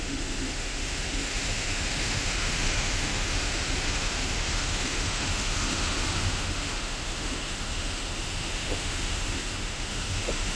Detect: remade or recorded remade